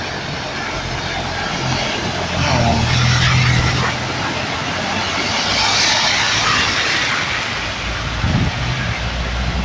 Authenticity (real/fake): real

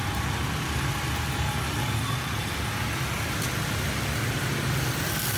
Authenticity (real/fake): real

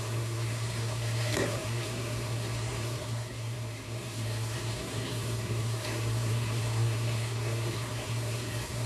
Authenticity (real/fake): fake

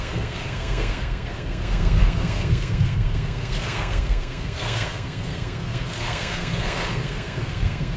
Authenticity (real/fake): fake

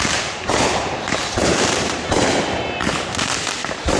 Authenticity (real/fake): real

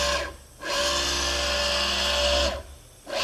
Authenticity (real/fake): real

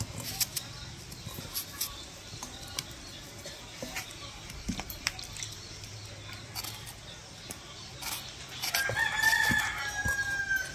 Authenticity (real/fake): real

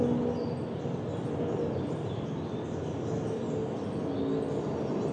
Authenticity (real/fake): real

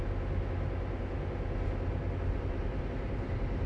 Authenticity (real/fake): real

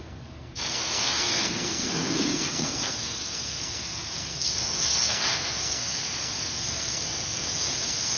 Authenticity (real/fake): fake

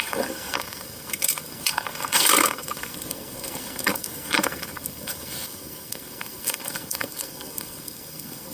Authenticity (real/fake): fake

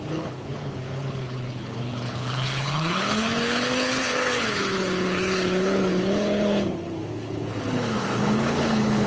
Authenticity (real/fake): fake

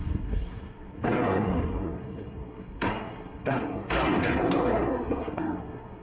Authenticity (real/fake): fake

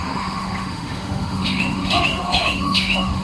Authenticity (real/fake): fake